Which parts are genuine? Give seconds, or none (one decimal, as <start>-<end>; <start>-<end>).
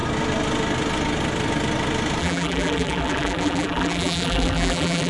0.0-2.2